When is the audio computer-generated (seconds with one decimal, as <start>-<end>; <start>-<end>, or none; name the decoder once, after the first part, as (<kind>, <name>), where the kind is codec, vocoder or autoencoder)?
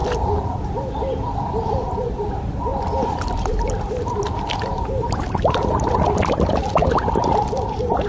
0.0-2.2 (vocoder, BigVGAN v2); 2.7-5.9; 6.8-8.1